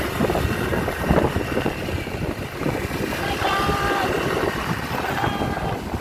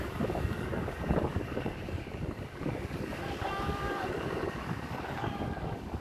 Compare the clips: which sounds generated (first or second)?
second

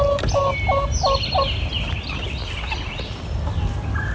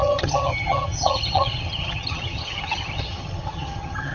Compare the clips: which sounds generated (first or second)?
second